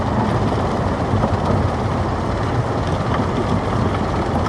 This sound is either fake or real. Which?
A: real